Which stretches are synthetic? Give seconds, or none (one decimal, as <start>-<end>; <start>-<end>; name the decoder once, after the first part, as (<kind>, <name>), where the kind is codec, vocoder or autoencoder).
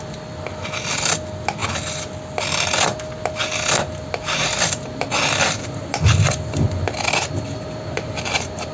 none